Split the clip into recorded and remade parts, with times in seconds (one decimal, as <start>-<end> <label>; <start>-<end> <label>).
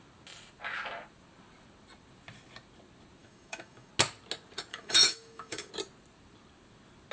0.0-3.2 recorded; 3.2-3.9 remade; 3.9-4.7 recorded; 4.7-5.7 remade; 5.7-7.1 recorded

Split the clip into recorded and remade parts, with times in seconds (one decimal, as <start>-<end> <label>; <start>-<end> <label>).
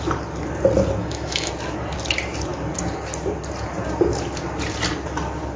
0.0-1.0 recorded; 1.0-1.5 remade; 1.5-5.6 recorded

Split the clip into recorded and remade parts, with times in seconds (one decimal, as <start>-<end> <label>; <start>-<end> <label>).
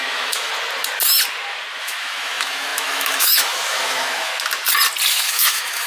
0.0-0.5 remade; 0.5-1.8 recorded; 1.8-4.3 remade; 4.3-5.1 recorded; 5.1-5.9 remade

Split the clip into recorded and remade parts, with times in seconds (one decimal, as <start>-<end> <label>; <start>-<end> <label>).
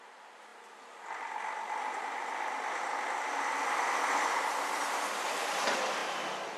0.0-6.6 recorded